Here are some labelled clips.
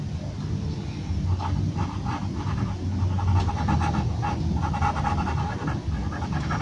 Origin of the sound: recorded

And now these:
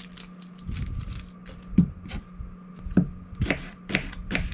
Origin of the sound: recorded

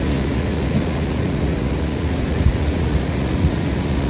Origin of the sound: remade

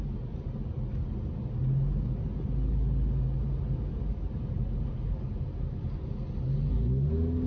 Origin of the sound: recorded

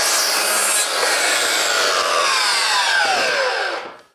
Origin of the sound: recorded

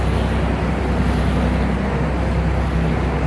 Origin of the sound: recorded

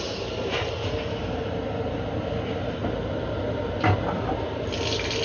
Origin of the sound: recorded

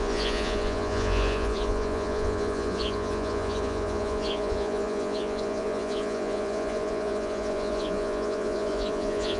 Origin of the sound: remade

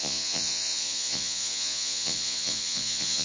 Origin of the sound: remade